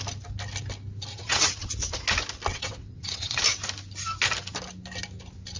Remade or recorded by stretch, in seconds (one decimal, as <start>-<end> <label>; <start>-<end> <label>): 0.0-1.1 recorded; 1.1-1.7 remade; 1.7-2.5 recorded; 2.5-3.4 remade; 3.4-5.6 recorded